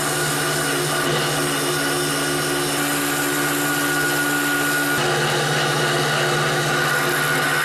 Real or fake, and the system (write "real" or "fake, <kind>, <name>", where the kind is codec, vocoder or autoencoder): real